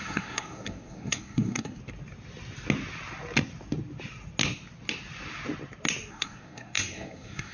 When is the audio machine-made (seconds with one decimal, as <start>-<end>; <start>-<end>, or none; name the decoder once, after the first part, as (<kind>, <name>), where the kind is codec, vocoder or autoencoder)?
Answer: 0.0-1.8 (codec, SNAC); 6.1-7.5